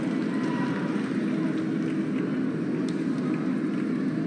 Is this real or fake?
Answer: real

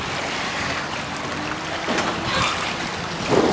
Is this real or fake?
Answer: real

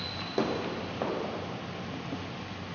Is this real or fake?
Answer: real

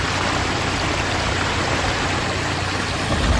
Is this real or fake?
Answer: real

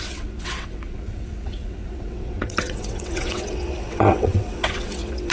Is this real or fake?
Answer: fake